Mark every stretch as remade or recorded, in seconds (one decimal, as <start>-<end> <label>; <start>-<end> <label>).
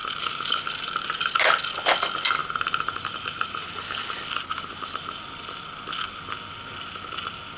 0.0-7.6 recorded